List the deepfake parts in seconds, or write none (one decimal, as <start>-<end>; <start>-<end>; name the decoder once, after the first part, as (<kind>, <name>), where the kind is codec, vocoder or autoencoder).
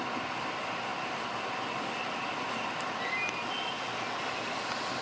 none